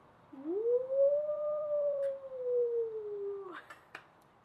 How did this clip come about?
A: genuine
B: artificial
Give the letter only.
B